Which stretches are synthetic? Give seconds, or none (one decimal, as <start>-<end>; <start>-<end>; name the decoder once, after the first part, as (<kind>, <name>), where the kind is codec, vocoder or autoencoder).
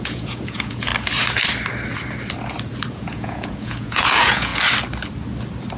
0.0-0.9 (vocoder, Vocos); 2.9-4.5